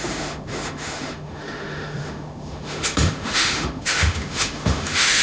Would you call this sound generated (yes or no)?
yes